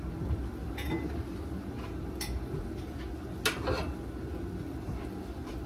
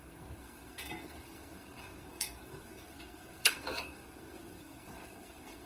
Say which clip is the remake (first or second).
second